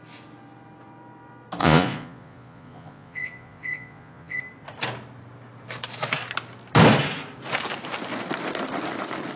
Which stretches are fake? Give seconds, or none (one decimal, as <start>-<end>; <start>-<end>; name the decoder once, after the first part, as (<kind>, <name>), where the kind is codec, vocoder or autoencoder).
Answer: 1.6-4.4 (vocoder, Vocos)